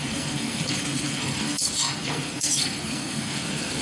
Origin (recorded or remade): remade